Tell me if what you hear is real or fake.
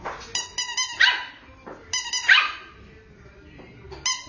real